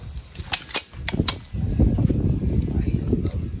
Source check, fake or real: real